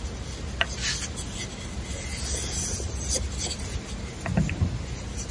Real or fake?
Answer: real